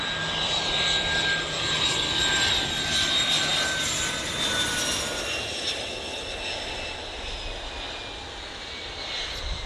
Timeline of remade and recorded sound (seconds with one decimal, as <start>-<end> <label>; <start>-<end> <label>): 0.0-9.7 recorded